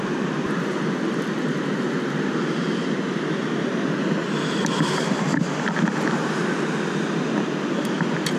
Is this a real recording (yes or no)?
yes